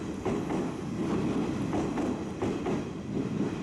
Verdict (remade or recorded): recorded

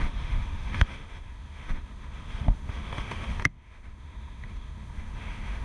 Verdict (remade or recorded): remade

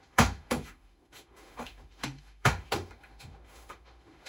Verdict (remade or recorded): remade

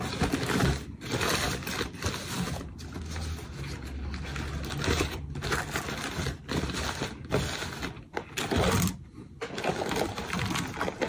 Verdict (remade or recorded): recorded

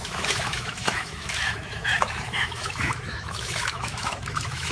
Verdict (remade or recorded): remade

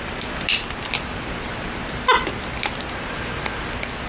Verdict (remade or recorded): recorded